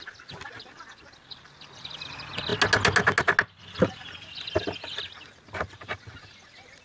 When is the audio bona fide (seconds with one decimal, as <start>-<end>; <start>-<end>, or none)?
0.0-6.8